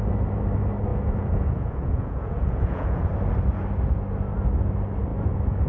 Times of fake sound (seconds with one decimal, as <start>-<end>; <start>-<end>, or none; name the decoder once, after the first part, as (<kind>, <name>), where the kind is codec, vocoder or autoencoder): 0.9-3.1 (vocoder, Vocos)